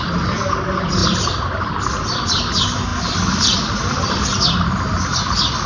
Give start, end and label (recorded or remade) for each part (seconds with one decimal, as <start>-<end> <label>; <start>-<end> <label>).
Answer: 0.0-5.7 recorded